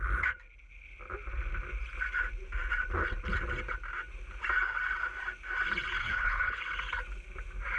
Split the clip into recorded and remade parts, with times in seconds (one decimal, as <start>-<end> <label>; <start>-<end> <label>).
0.0-6.0 recorded; 6.0-6.6 remade; 6.6-7.8 recorded